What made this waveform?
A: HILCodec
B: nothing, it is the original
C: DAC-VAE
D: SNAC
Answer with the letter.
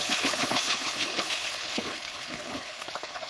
A